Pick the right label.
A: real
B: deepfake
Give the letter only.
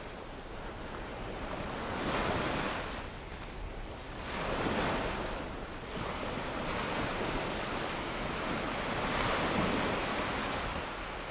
A